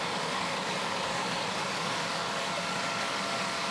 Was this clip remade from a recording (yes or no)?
yes